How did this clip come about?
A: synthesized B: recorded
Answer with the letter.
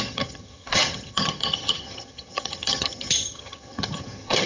A